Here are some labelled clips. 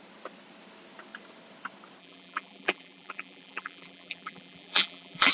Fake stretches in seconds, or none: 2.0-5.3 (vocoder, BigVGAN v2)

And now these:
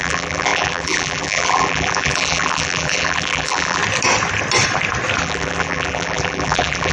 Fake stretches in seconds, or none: 0.0-3.8 (vocoder, BigVGAN v2); 5.2-6.9

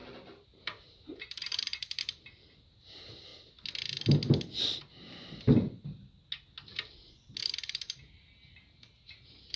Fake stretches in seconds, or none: 0.0-3.3 (vocoder, BigVGAN v2); 7.4-9.6